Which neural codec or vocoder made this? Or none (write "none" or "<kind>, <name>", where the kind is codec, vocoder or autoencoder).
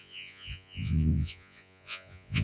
vocoder, Vocos